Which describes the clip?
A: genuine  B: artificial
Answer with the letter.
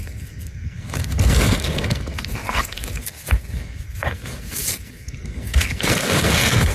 B